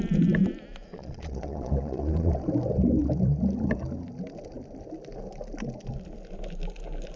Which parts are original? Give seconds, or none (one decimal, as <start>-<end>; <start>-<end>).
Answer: 0.0-0.9; 2.3-7.2